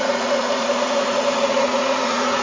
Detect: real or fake fake